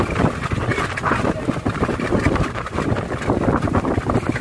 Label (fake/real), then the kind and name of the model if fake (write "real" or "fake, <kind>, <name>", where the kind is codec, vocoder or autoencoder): real